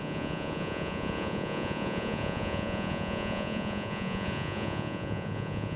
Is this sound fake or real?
fake